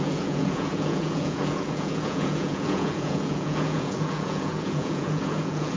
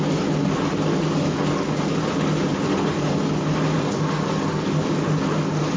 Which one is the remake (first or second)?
first